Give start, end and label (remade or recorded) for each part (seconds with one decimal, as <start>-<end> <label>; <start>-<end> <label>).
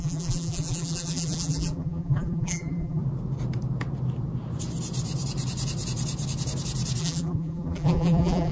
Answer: 0.0-3.0 remade; 3.0-7.0 recorded; 7.0-8.5 remade